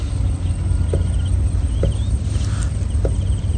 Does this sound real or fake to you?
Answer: real